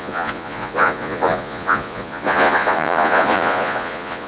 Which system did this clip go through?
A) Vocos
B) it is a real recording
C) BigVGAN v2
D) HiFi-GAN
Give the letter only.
A